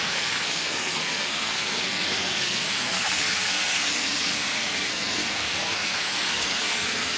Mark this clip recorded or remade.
remade